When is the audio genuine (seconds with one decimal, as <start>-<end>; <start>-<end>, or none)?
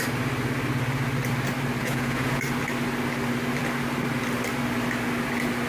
0.0-1.8; 2.4-5.7